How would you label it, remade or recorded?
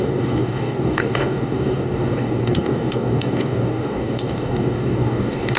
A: remade